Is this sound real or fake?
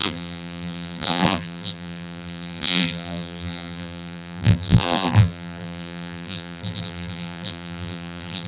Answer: fake